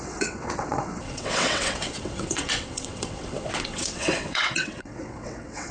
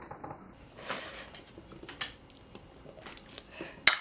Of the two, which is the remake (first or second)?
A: first